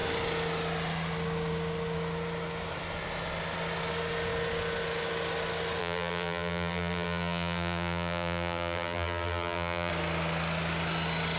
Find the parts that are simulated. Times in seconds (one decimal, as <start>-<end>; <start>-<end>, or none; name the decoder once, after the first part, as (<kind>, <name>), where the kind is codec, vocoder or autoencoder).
5.8-9.9 (vocoder, BigVGAN v2)